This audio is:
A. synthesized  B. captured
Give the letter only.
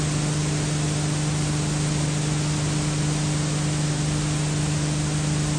B